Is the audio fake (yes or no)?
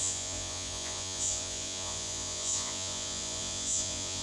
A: yes